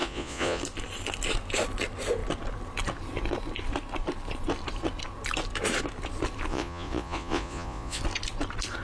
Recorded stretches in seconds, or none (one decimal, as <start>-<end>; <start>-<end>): 0.6-6.5; 8.0-8.8